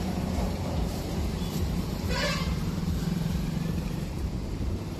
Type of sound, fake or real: fake